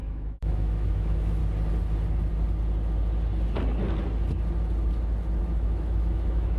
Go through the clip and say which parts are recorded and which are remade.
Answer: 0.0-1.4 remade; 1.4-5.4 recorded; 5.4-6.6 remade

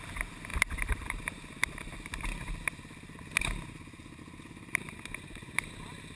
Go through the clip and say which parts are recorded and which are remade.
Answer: 0.0-6.2 recorded

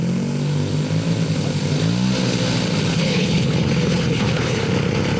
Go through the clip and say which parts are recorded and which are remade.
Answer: 0.0-2.9 recorded; 2.9-4.6 remade; 4.6-5.2 recorded

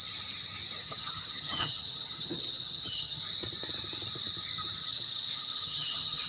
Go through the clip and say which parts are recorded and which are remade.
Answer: 0.0-0.8 recorded; 0.8-3.2 remade; 3.2-4.8 recorded; 4.8-6.3 remade